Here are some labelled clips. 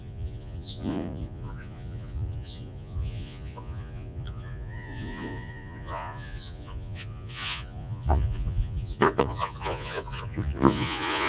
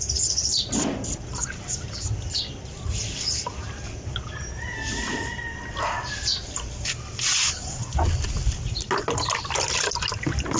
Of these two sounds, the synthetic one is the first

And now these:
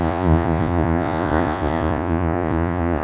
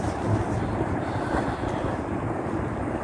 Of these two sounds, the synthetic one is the first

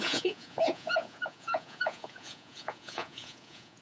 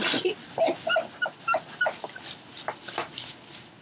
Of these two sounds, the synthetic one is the first